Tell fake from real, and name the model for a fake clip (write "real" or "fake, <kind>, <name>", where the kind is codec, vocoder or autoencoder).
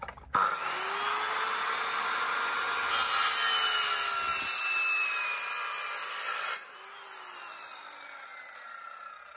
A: real